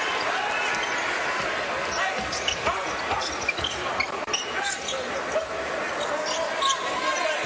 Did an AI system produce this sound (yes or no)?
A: no